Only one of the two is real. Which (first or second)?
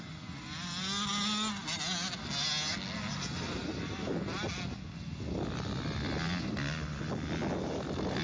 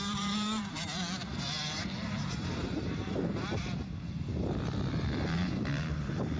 first